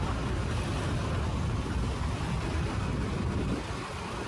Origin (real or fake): real